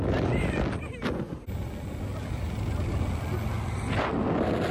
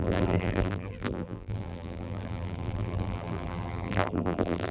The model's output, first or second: second